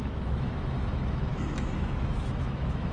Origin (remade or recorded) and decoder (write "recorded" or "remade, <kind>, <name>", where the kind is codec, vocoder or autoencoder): remade, autoencoder, DAC-VAE